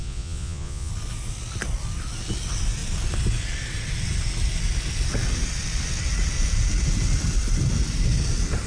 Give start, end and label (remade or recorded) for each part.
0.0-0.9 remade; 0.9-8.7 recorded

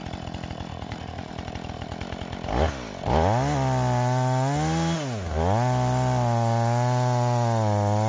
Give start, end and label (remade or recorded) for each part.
0.0-0.7 recorded; 0.7-1.3 remade; 1.3-8.1 recorded

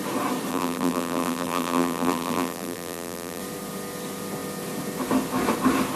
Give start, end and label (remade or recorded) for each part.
0.0-0.5 recorded; 0.5-3.4 remade; 3.4-6.0 recorded

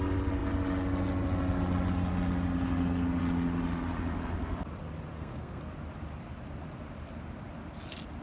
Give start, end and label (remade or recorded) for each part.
0.0-5.1 recorded; 5.1-5.6 remade; 5.6-8.2 recorded